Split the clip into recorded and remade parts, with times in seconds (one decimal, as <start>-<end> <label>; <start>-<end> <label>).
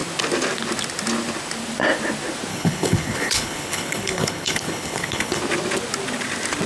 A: 0.0-2.5 recorded; 2.5-5.4 remade; 5.4-6.7 recorded